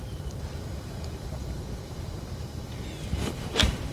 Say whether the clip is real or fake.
fake